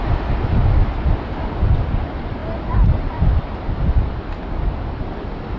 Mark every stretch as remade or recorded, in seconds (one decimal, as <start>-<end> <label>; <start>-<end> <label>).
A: 0.0-5.6 recorded